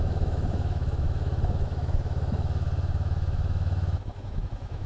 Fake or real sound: fake